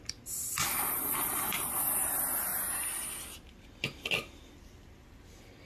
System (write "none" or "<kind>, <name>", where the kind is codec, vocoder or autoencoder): none